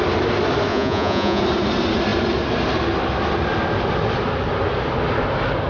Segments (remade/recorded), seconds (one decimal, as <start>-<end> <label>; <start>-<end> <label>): 0.0-0.7 recorded; 0.7-1.4 remade; 1.4-5.7 recorded